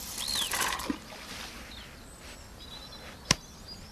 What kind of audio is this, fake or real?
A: real